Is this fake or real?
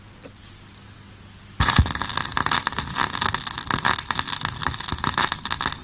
real